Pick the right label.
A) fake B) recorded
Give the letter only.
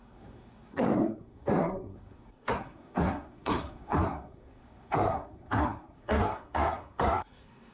A